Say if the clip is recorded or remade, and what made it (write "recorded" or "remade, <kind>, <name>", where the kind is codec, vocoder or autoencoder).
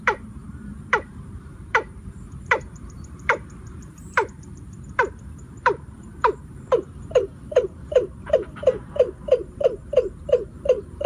remade, vocoder, BigVGAN v2